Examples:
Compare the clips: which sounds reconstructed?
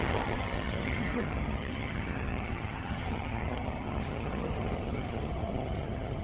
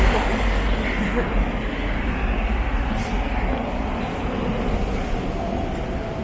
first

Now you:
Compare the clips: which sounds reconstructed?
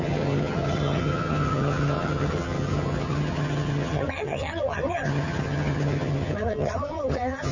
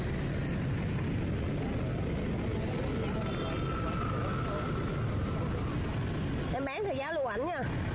first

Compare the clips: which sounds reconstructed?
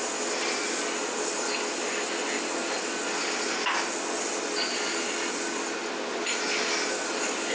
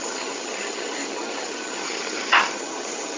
second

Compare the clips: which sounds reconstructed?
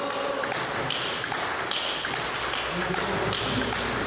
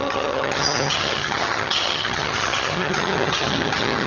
second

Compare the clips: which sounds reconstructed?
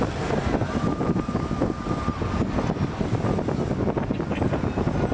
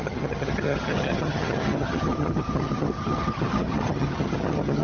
second